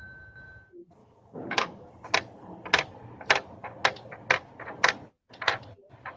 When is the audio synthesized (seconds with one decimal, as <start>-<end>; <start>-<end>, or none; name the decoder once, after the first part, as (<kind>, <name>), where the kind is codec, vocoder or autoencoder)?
1.0-1.9 (autoencoder, DAC-VAE)